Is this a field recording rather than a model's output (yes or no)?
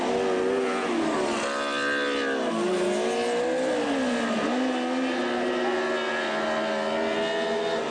yes